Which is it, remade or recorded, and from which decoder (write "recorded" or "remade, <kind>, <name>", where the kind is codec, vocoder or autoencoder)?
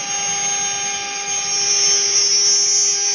recorded